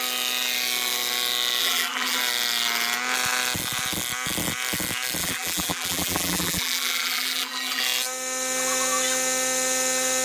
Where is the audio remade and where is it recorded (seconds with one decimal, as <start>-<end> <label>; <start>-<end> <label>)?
0.0-1.6 recorded; 1.6-2.2 remade; 2.2-5.2 recorded; 5.2-7.8 remade; 7.8-10.2 recorded